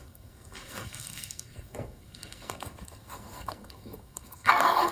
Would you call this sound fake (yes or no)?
yes